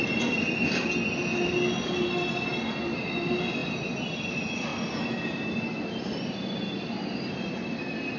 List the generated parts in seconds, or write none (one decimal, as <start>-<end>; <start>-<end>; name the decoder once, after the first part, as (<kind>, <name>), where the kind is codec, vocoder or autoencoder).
none